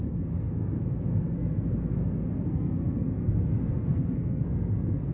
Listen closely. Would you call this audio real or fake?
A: fake